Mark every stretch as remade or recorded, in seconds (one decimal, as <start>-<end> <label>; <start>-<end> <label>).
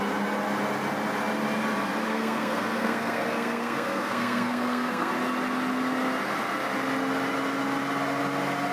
0.0-2.1 recorded; 2.1-5.1 remade; 5.1-8.7 recorded